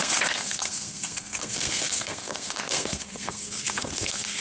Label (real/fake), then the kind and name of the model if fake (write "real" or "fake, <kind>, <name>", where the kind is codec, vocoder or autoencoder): fake, codec, SNAC